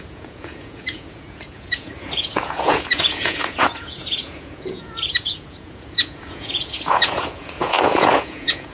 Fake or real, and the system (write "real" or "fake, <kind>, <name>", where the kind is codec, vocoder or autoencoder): fake, vocoder, Vocos